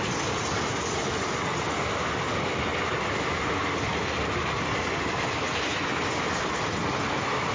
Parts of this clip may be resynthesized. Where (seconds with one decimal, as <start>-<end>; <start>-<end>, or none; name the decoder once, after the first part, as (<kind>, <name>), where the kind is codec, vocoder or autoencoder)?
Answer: none